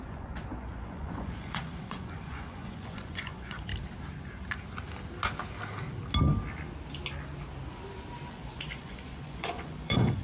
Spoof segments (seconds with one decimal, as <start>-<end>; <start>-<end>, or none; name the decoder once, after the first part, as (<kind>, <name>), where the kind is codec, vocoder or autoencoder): 0.0-3.7 (vocoder, Vocos); 8.3-10.2